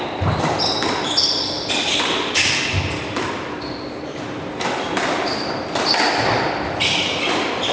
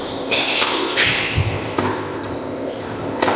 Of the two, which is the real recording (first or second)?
first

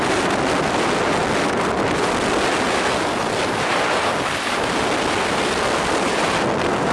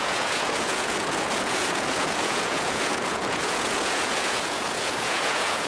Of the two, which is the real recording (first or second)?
first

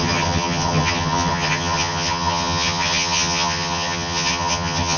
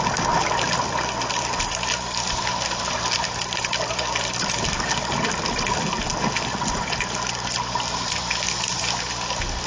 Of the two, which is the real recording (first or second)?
second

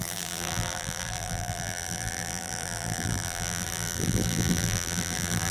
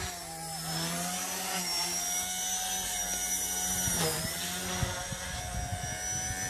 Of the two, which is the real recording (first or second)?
second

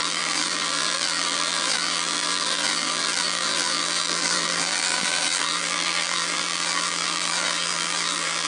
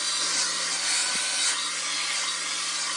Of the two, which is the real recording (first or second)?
second